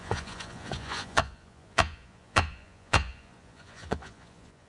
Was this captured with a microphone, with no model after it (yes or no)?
no